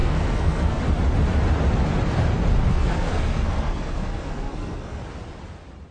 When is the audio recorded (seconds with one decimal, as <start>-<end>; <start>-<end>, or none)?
0.8-2.7; 5.0-5.9